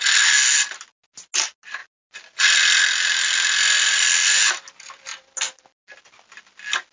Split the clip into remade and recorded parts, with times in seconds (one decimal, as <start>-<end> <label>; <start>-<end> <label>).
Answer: 0.0-6.9 recorded